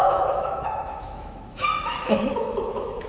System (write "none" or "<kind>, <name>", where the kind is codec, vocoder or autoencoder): autoencoder, DAC-VAE